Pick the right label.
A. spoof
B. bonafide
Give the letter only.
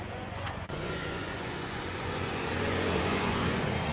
A